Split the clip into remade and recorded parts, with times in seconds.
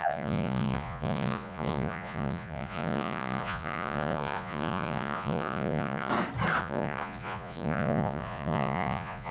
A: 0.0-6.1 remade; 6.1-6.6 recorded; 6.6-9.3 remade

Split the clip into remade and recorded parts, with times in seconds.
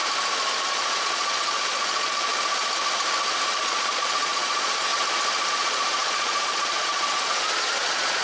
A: 0.0-0.7 recorded; 0.7-2.3 remade; 2.3-3.6 recorded; 3.6-4.9 remade; 4.9-5.5 recorded; 5.5-8.2 remade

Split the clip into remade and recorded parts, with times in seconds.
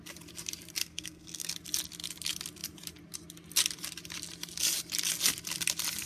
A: 0.0-0.8 recorded; 0.8-1.5 remade; 1.5-6.1 recorded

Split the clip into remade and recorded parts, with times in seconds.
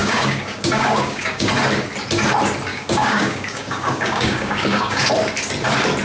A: 0.0-1.5 remade; 1.5-2.7 recorded; 2.7-5.0 remade; 5.0-6.0 recorded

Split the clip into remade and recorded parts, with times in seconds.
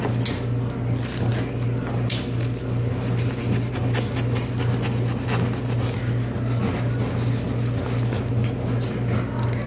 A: 0.0-9.7 recorded